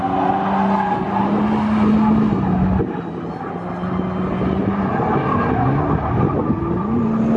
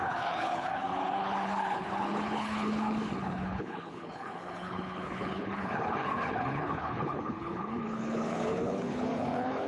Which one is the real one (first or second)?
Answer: first